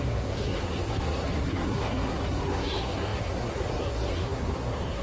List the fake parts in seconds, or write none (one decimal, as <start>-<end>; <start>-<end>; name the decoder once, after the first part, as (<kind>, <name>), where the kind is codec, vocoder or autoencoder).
0.0-5.0 (codec, SNAC)